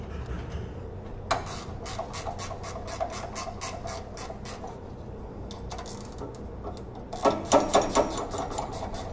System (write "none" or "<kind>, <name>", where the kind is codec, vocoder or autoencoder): none